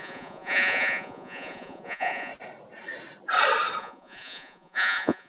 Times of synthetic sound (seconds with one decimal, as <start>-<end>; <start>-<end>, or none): 0.0-2.3; 3.8-5.3